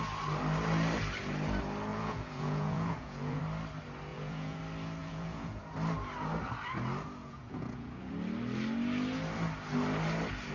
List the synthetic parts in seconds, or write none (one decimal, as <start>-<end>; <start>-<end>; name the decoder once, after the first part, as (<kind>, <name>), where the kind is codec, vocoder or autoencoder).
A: 1.9-3.4 (vocoder, Vocos); 4.1-4.6; 5.0-5.6; 7.2-8.1

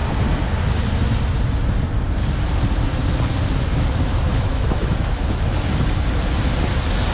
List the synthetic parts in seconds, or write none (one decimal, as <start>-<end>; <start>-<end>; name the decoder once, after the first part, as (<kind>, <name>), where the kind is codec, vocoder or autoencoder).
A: 4.3-5.4 (autoencoder, DAC-VAE)

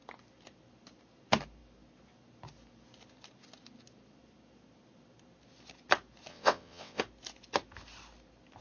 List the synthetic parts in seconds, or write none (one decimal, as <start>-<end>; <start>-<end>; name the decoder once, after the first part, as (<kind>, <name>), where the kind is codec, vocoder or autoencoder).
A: 6.3-7.0 (vocoder, WaveNeXt)

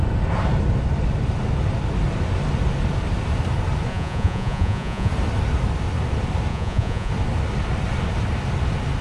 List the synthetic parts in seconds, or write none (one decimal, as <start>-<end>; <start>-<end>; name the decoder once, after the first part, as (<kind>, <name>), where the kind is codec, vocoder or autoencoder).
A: 3.9-5.1 (vocoder, Vocos); 6.5-7.1